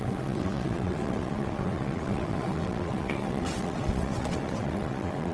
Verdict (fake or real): fake